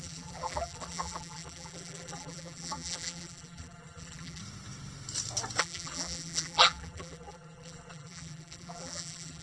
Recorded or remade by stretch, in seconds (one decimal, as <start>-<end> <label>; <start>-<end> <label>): 0.0-4.4 remade; 4.4-5.6 recorded; 5.6-9.4 remade